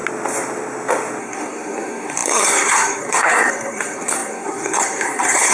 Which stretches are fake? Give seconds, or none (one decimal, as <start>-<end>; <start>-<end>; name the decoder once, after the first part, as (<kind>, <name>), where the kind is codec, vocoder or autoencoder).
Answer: 1.2-5.5 (codec, SNAC)